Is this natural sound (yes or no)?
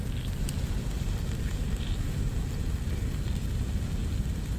yes